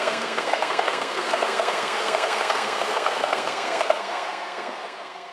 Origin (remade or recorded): remade